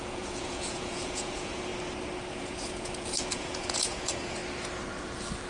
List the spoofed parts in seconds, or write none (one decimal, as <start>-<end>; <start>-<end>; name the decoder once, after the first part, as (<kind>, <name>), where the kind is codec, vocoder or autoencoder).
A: 0.0-1.7 (vocoder, Vocos); 2.3-4.4